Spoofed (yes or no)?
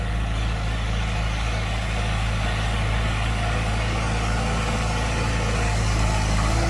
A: yes